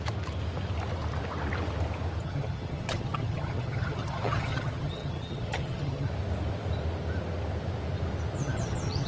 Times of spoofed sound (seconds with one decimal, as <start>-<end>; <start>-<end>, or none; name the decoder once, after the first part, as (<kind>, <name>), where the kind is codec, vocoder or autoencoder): 2.2-6.1 (vocoder, HiFi-GAN); 8.4-9.1